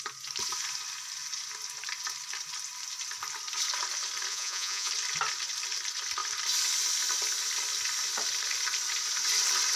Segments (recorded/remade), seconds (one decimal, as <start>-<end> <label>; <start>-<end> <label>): 0.0-4.3 recorded; 4.3-4.9 remade; 4.9-9.8 recorded